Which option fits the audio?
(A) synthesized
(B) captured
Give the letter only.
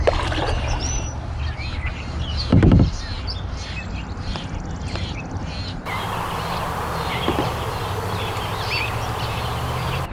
A